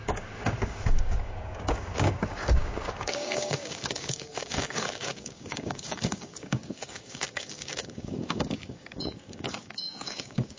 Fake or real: fake